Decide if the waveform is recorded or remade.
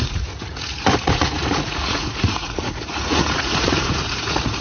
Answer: remade